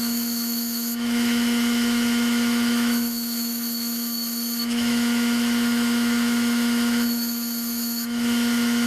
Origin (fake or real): fake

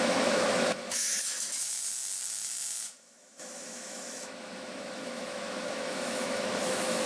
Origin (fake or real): fake